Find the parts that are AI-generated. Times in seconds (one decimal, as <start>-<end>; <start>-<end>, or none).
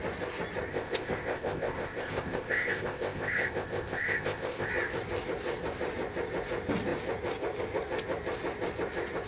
0.7-4.7